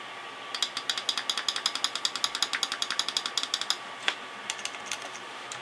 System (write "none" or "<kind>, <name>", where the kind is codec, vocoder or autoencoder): none